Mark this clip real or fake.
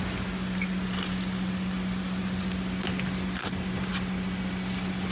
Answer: real